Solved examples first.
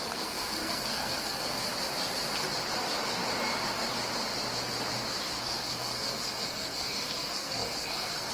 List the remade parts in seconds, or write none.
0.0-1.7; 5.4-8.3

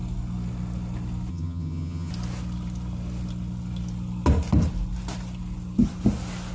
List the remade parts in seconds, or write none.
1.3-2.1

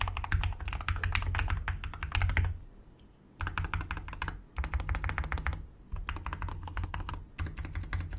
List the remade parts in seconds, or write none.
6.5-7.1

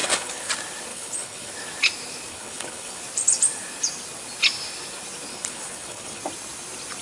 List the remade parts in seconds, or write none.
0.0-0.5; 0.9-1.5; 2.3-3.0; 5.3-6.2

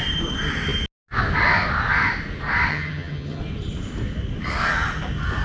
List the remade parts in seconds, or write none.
2.7-3.4

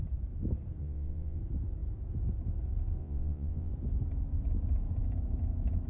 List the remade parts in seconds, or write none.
0.8-1.4; 3.0-3.7

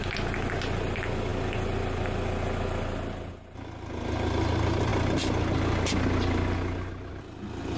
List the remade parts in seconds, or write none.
none

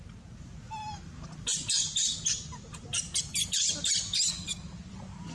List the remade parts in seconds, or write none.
none